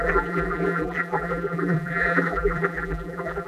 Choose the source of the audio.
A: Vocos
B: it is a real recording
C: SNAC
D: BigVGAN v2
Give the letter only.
D